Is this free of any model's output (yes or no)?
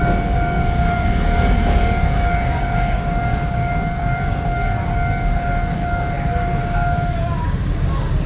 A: no